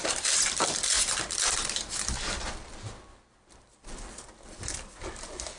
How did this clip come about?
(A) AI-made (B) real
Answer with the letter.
A